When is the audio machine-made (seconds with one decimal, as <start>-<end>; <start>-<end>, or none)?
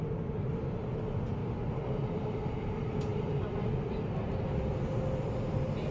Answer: 1.4-2.7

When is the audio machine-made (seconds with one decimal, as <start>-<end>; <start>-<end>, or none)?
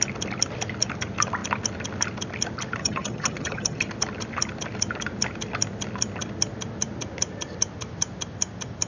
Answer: 2.8-3.8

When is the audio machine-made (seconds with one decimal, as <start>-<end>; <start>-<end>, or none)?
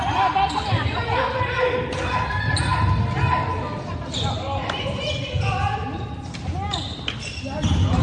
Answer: none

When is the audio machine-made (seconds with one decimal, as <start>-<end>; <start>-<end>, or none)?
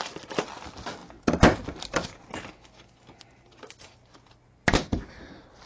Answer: none